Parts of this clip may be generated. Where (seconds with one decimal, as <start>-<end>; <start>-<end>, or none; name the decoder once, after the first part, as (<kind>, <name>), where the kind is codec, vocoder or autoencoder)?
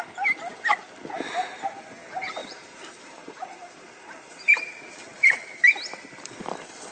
2.4-5.4 (vocoder, BigVGAN v2)